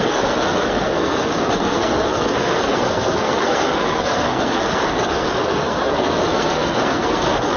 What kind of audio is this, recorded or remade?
remade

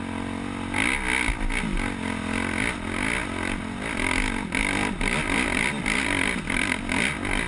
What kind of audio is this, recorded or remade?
recorded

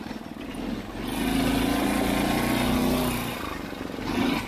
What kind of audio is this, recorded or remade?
recorded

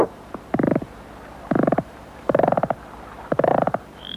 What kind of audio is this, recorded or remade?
remade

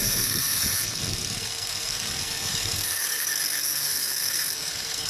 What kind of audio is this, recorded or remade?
remade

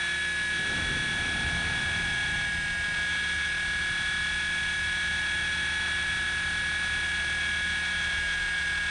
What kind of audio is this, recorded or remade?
recorded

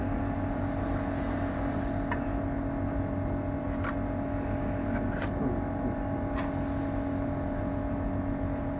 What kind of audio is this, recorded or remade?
recorded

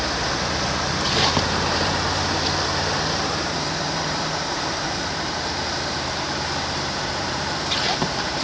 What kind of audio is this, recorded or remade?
remade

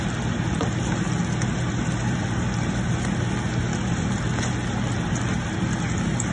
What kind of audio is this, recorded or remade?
recorded